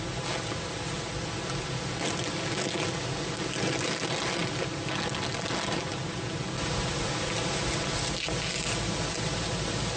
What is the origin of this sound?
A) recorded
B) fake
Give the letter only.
A